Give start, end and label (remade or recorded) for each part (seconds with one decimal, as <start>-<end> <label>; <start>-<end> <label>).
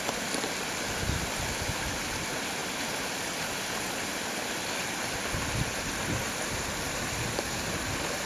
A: 0.0-2.6 recorded; 2.6-7.6 remade; 7.6-8.3 recorded